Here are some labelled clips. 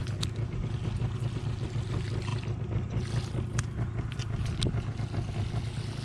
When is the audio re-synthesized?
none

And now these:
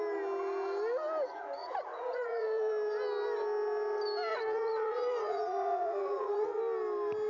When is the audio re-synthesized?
1.6-2.7 (vocoder, Vocos); 4.3-6.6

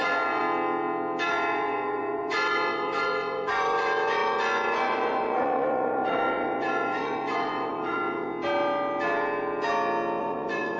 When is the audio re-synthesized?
0.0-0.4 (vocoder, Vocos); 1.3-8.3; 10.2-10.8

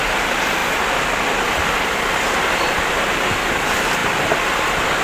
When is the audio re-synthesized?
none

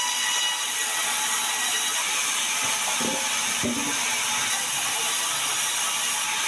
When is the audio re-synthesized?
none

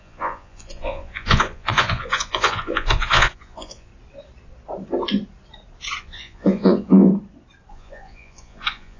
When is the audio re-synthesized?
0.0-3.9 (vocoder, Vocos); 6.0-7.1; 7.7-9.0